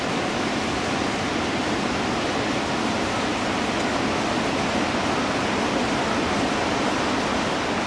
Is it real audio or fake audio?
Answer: real